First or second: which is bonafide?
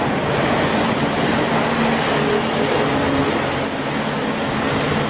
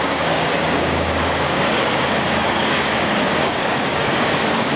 first